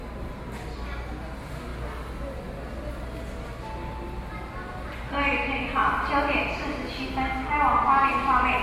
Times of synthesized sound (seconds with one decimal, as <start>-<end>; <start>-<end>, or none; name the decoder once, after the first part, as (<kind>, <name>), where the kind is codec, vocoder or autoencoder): none